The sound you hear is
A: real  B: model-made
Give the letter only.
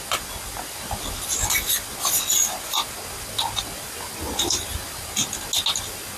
A